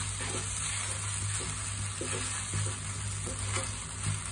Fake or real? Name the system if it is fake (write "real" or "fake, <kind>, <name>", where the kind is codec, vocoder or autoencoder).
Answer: real